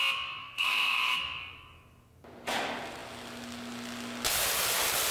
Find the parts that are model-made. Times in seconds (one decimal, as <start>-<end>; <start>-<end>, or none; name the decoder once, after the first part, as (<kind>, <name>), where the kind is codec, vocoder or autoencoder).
0.4-1.2 (codec, SNAC)